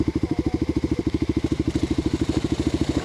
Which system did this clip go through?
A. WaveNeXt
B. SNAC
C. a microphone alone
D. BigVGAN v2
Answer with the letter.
D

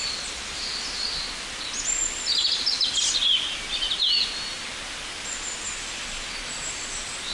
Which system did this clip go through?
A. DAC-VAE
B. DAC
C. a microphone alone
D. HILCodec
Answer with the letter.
C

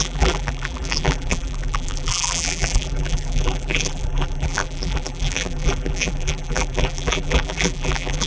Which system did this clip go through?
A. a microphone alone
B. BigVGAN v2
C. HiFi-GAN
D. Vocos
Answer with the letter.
B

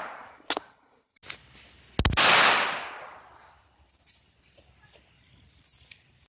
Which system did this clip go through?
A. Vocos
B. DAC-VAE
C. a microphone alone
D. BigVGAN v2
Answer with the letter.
C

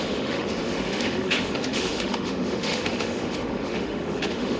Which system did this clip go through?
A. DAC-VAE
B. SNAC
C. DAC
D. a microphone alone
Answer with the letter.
A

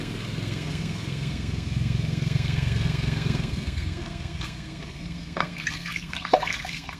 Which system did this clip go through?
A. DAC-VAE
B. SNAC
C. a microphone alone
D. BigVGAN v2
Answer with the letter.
B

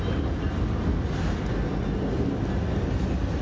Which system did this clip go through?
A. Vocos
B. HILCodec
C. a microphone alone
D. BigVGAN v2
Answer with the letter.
C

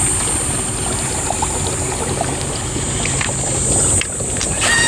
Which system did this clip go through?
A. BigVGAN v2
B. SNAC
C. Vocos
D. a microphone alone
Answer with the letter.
D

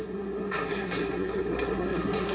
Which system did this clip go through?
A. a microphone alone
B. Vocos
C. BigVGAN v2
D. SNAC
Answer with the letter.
D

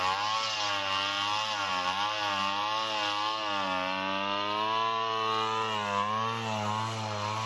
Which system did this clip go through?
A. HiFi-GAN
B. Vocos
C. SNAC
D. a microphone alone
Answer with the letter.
D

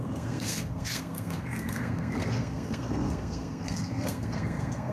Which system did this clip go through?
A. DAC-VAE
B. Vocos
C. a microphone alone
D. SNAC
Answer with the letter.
D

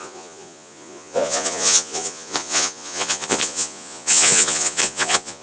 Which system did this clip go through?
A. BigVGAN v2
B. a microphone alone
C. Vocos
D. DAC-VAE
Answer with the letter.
C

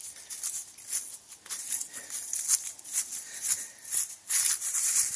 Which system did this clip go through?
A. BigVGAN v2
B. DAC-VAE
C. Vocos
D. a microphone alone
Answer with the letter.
D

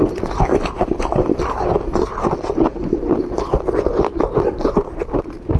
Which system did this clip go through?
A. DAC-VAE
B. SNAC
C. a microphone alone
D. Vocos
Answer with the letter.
C